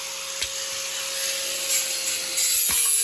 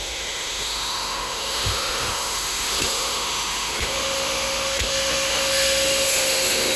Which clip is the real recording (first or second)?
first